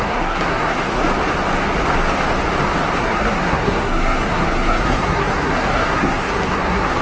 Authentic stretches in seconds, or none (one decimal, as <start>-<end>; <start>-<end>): 1.0-3.0